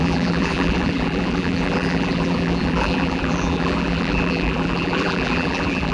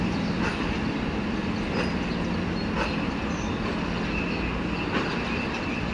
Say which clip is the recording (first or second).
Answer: second